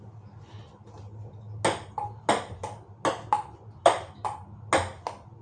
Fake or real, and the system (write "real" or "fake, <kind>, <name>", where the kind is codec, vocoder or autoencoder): real